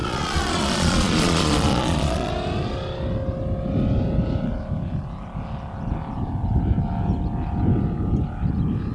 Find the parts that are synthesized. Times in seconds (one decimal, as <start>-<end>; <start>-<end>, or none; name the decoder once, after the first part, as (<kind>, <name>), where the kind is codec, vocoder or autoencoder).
0.0-2.3 (vocoder, Vocos)